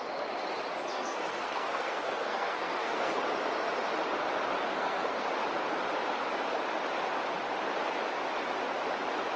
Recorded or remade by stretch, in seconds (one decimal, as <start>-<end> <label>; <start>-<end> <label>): 0.0-0.9 recorded; 0.9-3.2 remade; 3.2-4.7 recorded; 4.7-5.3 remade; 5.3-9.4 recorded